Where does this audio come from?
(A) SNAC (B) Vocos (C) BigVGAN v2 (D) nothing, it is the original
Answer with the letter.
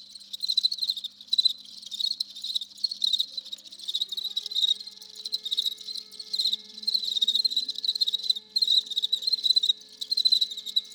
D